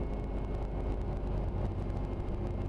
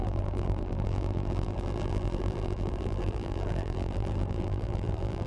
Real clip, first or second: first